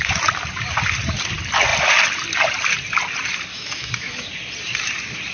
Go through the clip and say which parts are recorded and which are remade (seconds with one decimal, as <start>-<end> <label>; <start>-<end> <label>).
0.0-3.5 recorded; 3.5-4.3 remade; 4.3-5.3 recorded